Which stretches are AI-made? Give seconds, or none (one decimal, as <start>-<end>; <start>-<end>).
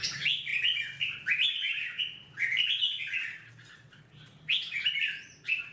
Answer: none